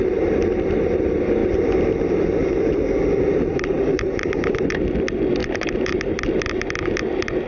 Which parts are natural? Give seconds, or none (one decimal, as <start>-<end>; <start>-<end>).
0.0-3.5; 4.7-5.4; 6.3-7.5